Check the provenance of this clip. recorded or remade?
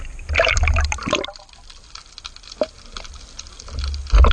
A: recorded